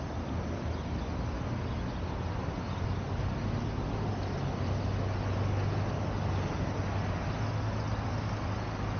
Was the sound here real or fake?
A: real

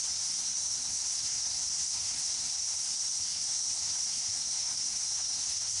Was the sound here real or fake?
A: fake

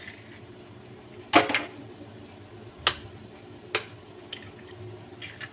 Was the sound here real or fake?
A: real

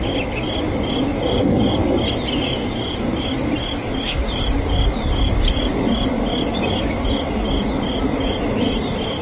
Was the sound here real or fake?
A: real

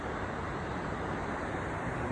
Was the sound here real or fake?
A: real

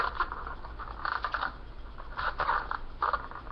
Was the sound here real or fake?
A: real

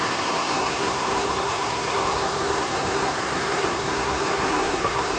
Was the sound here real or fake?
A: fake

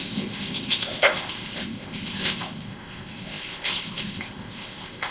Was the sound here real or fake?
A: fake